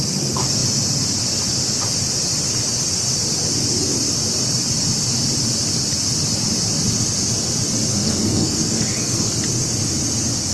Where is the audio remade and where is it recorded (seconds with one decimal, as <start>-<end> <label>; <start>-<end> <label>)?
0.0-7.9 recorded; 7.9-9.3 remade; 9.3-10.5 recorded